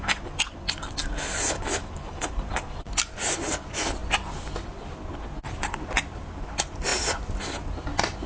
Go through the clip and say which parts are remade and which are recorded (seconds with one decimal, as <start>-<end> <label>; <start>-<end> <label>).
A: 0.0-8.3 recorded